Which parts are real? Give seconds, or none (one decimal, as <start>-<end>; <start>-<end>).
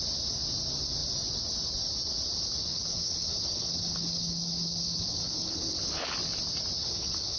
0.0-2.7; 6.1-6.8